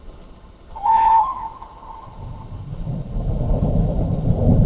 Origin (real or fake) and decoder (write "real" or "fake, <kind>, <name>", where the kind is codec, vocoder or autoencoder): fake, codec, HILCodec